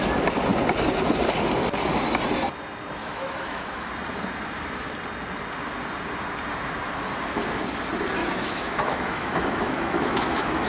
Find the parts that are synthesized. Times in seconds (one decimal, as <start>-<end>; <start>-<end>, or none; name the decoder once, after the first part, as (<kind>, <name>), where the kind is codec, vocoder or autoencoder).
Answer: 3.0-3.9 (autoencoder, DAC-VAE); 8.2-10.7

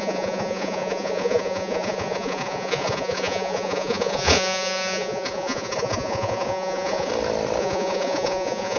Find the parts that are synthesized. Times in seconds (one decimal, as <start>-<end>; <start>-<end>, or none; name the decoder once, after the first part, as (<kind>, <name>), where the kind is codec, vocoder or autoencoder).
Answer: 0.0-7.1 (vocoder, Vocos); 7.6-8.8